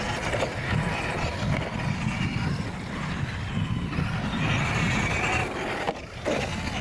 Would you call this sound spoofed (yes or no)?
no